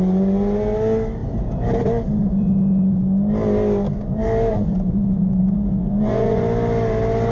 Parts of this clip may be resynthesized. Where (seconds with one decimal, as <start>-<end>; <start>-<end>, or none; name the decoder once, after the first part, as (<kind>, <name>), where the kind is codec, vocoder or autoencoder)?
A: 4.5-6.4 (vocoder, Vocos)

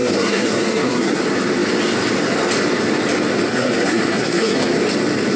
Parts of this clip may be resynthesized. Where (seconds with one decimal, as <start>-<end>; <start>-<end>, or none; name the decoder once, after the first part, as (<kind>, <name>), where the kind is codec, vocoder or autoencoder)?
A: 0.0-1.2 (codec, SNAC); 3.5-4.7

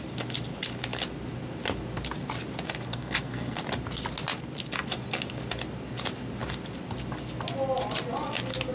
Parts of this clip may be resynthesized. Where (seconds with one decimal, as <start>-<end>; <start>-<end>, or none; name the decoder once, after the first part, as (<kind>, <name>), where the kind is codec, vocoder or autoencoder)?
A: 2.9-3.6 (codec, SNAC)

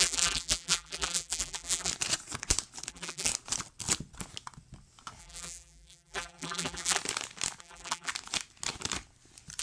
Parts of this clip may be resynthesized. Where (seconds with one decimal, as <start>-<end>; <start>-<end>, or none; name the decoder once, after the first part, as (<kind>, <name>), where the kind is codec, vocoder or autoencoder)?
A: 0.0-1.9 (vocoder, BigVGAN v2); 2.9-3.3; 5.2-7.0; 7.6-8.1

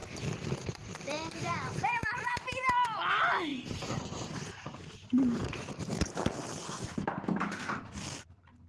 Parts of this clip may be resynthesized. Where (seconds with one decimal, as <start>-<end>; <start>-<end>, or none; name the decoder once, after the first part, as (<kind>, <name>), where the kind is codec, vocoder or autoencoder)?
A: 0.0-2.3 (vocoder, BigVGAN v2); 3.5-7.9

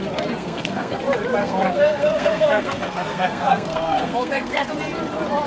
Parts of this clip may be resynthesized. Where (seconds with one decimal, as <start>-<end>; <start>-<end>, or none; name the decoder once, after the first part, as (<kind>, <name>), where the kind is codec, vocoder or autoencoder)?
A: 0.4-1.0 (codec, SNAC); 1.4-4.7

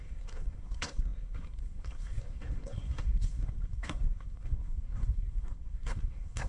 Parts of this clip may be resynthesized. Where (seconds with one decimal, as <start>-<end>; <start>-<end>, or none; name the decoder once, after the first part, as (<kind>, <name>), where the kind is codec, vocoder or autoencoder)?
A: 0.0-6.5 (codec, SNAC)

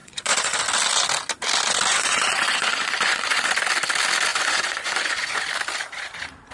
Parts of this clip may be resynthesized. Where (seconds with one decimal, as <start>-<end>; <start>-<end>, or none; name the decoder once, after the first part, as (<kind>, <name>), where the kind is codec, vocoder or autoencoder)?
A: 0.0-0.6 (vocoder, Vocos); 1.9-3.5; 4.3-5.4